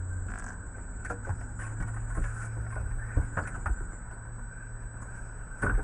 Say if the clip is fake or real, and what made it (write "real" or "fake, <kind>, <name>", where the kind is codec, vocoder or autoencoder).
real